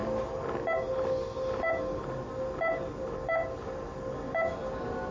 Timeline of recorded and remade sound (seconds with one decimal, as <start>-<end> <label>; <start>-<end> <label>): 0.0-5.1 recorded